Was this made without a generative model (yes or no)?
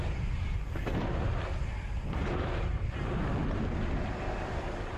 yes